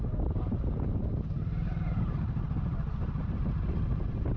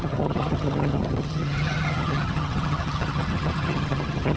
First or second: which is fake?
second